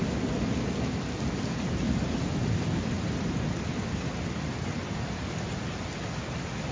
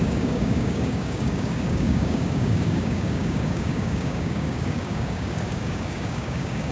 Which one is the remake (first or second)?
second